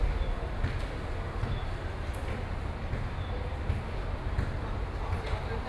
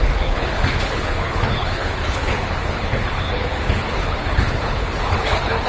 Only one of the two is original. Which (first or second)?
first